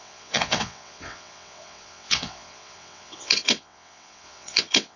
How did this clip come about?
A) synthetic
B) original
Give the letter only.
A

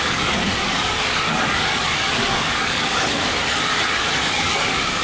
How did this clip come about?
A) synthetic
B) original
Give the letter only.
A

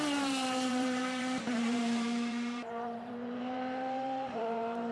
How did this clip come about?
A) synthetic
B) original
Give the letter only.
A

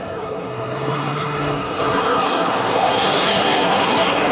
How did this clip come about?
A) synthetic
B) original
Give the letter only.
A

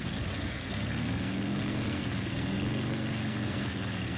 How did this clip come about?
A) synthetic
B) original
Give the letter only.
A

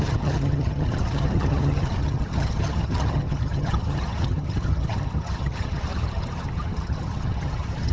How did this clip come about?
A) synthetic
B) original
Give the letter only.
A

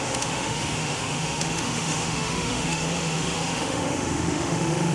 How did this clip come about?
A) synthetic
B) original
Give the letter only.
A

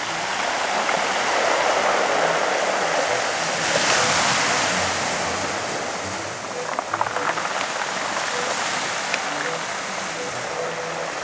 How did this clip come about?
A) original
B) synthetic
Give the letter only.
A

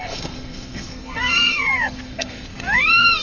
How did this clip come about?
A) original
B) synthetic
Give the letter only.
B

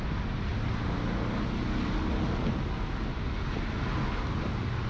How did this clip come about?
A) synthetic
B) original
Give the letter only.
B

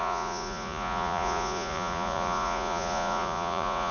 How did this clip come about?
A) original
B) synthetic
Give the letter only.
B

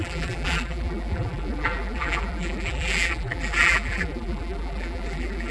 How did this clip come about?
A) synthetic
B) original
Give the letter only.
A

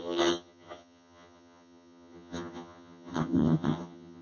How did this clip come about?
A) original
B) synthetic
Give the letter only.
B